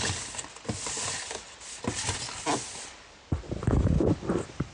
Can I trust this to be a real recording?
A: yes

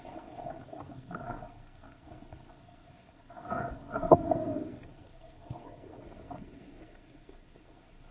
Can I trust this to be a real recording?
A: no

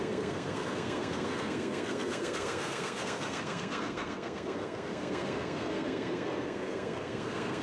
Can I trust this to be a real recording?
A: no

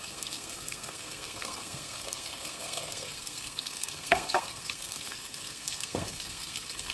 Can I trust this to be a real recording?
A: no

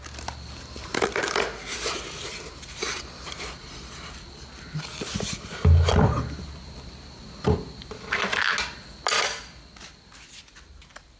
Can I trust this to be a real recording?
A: yes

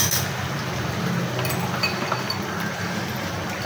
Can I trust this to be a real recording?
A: yes